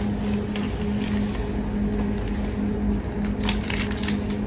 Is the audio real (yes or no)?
yes